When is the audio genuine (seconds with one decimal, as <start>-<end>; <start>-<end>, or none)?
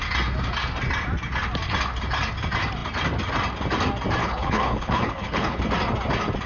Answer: 0.0-4.2; 5.6-6.5